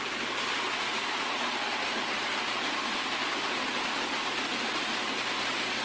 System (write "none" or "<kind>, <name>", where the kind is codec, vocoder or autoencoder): none